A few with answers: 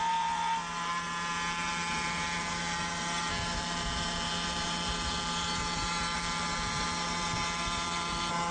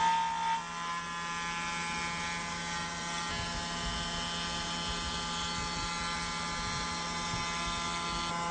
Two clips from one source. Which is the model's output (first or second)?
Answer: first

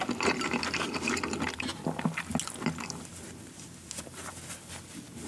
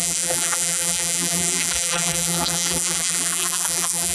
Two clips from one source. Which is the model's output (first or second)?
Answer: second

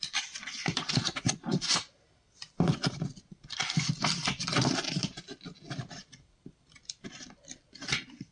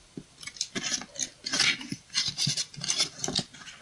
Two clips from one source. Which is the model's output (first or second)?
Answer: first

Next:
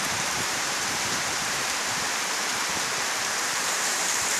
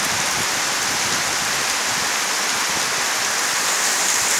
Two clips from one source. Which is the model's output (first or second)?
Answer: first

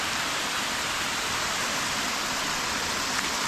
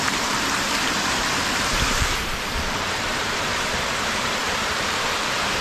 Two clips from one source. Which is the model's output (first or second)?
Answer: second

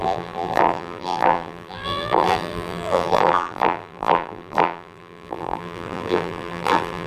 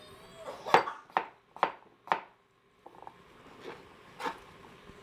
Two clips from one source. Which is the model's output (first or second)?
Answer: first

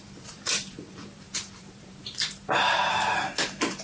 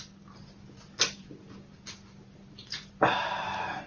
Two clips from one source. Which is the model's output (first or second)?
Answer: first